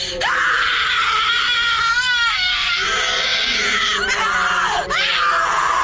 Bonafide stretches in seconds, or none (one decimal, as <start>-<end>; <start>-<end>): 0.0-1.9; 2.7-5.8